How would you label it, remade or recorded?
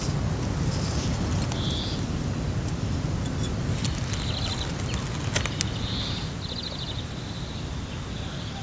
recorded